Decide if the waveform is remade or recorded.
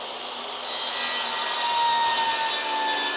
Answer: recorded